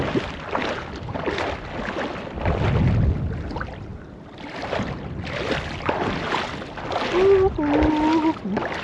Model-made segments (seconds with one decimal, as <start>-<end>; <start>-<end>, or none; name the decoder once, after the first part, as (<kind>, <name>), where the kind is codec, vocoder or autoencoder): none